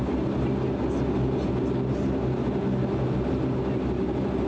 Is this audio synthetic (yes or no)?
no